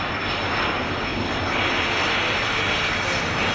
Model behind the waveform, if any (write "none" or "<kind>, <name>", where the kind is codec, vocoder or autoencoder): none